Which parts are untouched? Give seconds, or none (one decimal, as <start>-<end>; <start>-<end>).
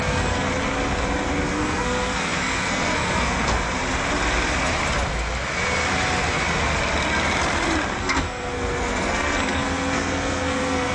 0.5-1.5; 3.5-8.0